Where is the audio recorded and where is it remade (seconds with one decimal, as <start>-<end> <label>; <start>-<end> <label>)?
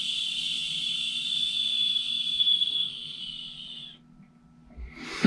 0.0-2.4 recorded; 2.4-3.2 remade; 3.2-5.3 recorded